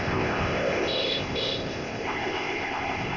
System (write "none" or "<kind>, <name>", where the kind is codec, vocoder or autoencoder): codec, ZipCodec